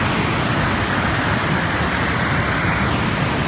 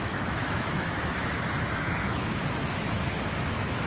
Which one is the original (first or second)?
first